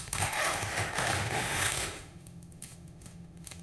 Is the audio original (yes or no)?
no